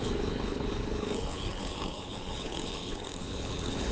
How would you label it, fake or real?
fake